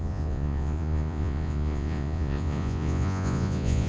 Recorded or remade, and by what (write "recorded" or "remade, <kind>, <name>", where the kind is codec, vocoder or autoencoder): remade, vocoder, Vocos